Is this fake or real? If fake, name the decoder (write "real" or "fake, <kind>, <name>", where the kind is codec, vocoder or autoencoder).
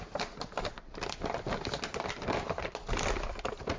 real